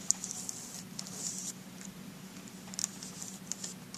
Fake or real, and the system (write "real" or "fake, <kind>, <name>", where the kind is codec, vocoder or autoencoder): real